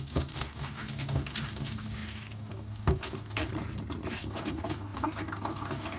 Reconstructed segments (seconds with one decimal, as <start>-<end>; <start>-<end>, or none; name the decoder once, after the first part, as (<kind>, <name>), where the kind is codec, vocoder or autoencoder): 0.0-3.5 (codec, DAC); 4.1-6.0

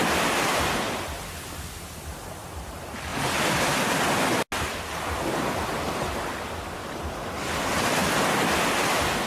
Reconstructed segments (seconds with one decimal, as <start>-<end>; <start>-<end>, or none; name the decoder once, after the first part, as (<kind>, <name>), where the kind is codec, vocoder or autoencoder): none

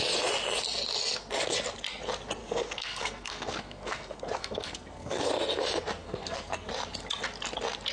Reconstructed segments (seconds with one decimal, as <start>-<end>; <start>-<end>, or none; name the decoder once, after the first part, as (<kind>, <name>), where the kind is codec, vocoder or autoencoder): 2.4-5.3 (codec, SNAC); 6.0-6.7

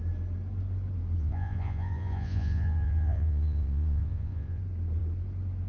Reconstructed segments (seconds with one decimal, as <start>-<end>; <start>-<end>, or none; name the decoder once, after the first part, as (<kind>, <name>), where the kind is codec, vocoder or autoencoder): 1.2-4.6 (vocoder, Vocos)

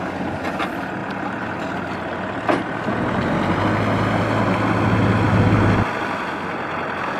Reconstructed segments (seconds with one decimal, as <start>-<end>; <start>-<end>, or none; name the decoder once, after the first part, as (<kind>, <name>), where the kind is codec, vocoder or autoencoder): none